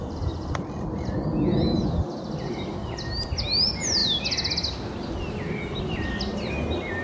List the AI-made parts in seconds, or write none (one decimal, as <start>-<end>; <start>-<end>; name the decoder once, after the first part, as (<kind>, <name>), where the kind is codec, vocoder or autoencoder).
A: 0.0-1.1 (vocoder, BigVGAN v2)